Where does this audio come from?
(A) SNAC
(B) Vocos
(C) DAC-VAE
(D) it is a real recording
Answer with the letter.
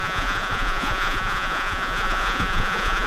B